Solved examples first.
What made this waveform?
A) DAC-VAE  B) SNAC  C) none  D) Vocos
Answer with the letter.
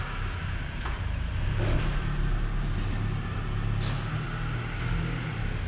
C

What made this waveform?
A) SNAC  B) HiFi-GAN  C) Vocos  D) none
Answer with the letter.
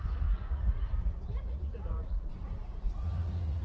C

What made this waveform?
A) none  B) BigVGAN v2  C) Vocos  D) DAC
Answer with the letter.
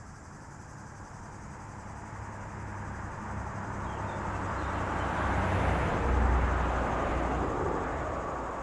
A